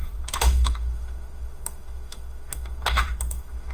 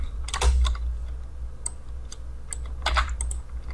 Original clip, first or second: second